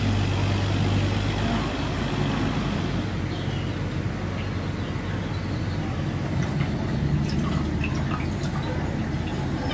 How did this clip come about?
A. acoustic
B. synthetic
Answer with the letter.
A